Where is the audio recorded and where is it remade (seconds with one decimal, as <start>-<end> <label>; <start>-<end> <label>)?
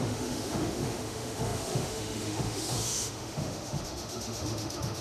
0.0-5.0 remade